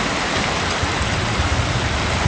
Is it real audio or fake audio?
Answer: real